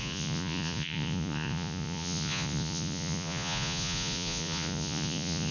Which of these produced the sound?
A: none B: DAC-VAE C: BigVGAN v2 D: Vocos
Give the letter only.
D